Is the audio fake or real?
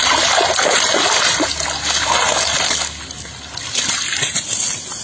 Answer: real